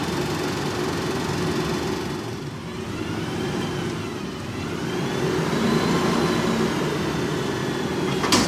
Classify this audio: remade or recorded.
recorded